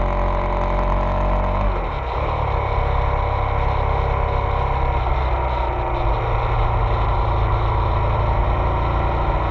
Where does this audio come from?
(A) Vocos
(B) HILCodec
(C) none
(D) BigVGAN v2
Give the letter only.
C